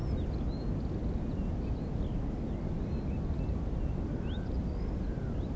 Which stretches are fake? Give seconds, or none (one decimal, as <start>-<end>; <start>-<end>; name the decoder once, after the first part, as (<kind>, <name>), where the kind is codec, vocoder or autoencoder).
none